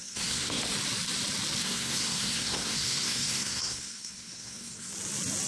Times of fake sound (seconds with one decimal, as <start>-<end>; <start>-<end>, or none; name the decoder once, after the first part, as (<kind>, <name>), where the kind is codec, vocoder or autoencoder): 0.0-0.6 (codec, SNAC); 1.6-4.9